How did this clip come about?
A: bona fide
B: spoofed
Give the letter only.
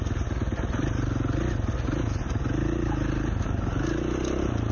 A